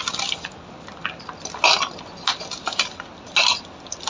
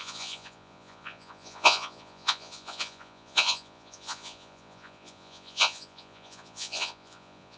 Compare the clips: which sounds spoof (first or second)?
second